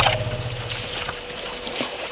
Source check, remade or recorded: recorded